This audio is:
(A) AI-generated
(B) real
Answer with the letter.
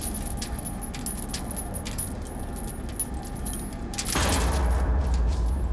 B